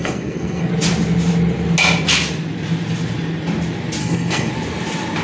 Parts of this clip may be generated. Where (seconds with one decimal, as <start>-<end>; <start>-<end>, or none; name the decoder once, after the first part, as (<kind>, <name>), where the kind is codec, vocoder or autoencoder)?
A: 0.0-0.7 (codec, SNAC); 4.0-4.5